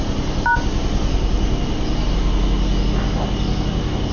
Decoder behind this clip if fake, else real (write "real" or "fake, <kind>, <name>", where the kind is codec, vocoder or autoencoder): real